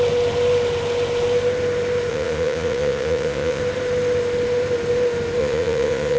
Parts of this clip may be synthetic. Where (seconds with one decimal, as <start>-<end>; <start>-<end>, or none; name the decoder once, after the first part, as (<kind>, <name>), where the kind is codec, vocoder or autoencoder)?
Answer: 2.1-3.6 (vocoder, Vocos); 5.4-6.2